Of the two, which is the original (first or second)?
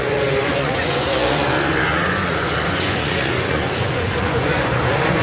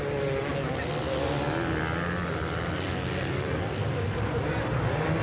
second